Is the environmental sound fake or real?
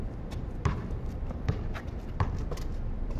fake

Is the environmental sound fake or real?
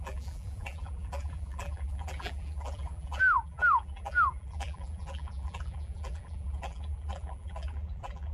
fake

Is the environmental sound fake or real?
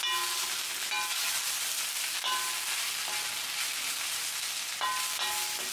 real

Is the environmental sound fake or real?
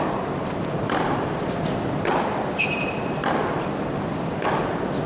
fake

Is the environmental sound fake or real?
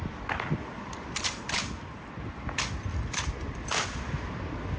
real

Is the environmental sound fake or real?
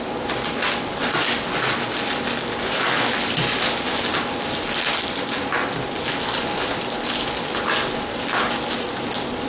real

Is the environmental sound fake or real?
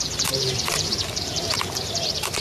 fake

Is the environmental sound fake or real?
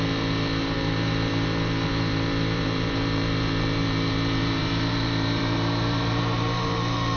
fake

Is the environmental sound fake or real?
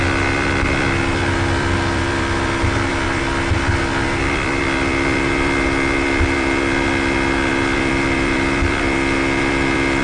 fake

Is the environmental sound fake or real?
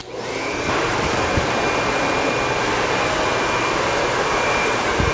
fake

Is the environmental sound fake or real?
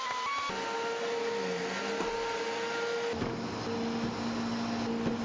real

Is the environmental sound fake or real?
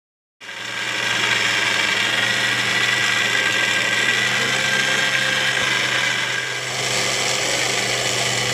real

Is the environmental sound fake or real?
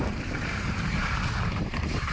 fake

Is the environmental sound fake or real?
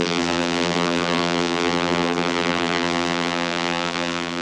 fake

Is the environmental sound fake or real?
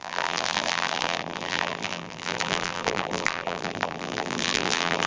fake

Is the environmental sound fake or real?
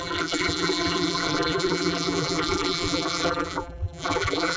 fake